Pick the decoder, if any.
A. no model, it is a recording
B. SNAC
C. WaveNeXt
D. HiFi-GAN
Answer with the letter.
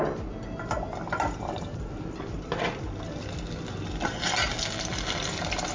A